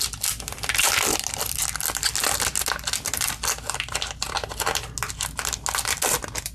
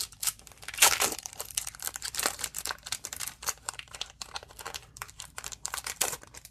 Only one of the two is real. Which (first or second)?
first